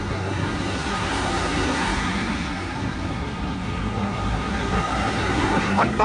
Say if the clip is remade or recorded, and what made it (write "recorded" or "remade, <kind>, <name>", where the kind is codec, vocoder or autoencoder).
remade, codec, SNAC